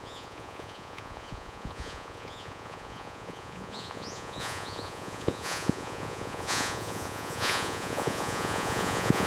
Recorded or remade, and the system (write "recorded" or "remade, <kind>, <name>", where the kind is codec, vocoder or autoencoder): remade, vocoder, Vocos